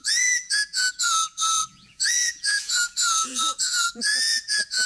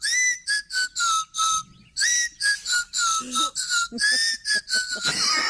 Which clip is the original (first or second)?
second